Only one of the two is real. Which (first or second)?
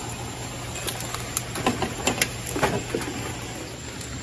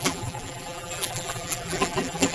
first